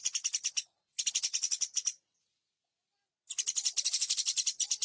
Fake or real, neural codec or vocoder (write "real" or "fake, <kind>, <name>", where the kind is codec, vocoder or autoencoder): real